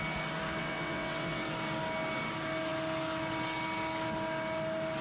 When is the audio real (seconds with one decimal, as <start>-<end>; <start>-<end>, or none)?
0.0-0.6; 1.5-5.0